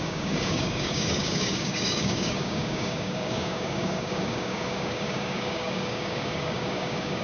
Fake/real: fake